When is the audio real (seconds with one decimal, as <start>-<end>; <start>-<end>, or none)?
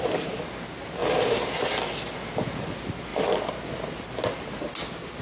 0.0-5.2